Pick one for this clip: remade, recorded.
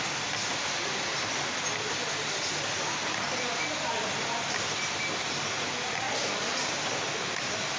recorded